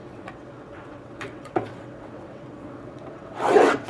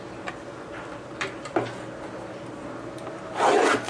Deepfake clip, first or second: first